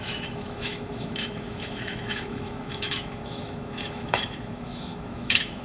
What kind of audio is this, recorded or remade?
remade